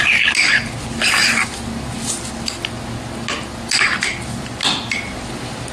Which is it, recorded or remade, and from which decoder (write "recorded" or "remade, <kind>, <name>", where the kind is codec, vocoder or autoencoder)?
recorded